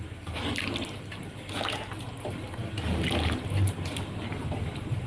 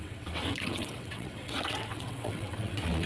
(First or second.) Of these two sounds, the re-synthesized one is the second